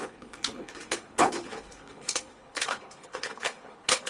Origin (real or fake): fake